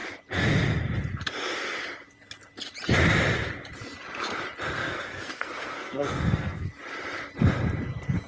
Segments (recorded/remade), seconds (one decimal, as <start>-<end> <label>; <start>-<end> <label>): 0.0-4.8 recorded; 4.8-6.7 remade; 6.7-8.3 recorded